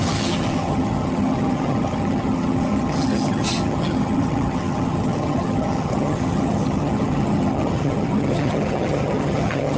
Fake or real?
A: fake